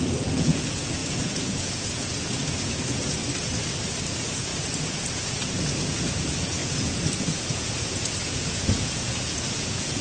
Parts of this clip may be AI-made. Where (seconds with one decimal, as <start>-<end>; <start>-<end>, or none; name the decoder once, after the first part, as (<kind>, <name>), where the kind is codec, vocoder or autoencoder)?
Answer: 0.0-3.2 (vocoder, Vocos); 4.0-10.0